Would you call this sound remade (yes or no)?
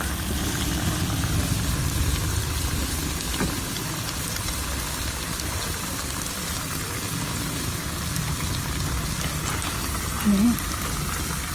no